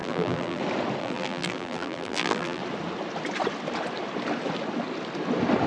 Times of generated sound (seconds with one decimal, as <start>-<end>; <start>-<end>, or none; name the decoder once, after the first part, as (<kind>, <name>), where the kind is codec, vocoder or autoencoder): 0.0-0.6 (vocoder, BigVGAN v2); 1.0-2.6